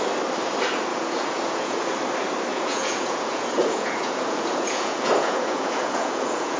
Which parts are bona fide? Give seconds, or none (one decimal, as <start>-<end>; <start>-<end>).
0.0-0.9; 1.9-2.5